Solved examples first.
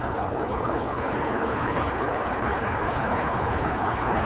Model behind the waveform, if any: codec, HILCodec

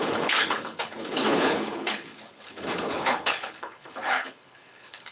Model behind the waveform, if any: codec, HILCodec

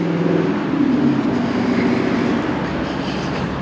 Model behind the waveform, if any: none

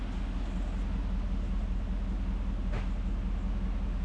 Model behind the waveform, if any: none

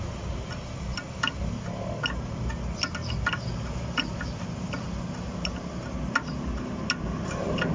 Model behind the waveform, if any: none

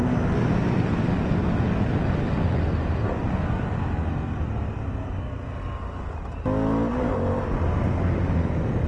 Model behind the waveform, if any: none